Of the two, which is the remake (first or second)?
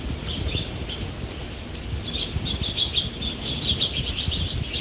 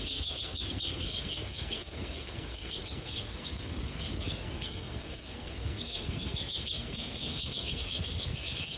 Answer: second